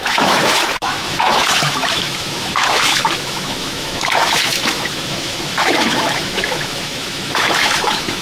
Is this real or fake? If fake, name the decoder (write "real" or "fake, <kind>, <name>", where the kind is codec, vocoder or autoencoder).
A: fake, autoencoder, DAC-VAE